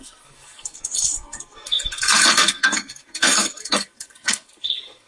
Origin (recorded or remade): remade